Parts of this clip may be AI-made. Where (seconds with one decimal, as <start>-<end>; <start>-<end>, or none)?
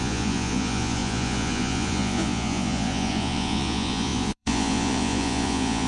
0.0-5.9